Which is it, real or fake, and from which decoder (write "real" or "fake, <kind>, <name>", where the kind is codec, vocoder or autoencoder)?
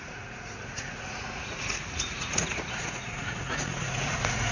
fake, vocoder, Vocos